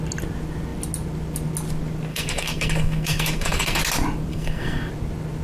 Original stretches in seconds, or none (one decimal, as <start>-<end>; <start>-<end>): 0.0-2.1; 3.8-4.3; 4.9-5.4